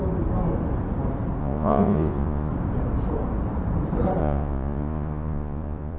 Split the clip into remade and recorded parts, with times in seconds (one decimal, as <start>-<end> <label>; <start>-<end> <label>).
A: 0.0-1.4 recorded; 1.4-2.5 remade; 2.5-4.2 recorded; 4.2-6.0 remade